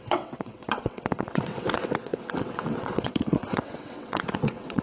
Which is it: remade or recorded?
remade